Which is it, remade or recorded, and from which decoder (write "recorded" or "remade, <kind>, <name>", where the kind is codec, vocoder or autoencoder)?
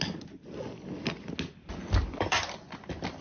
recorded